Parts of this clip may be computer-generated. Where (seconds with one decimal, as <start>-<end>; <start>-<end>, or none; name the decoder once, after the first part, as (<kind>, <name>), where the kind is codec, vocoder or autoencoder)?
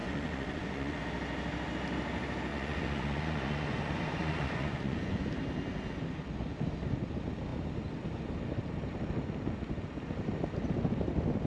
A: 0.0-1.0 (vocoder, Vocos); 2.5-5.3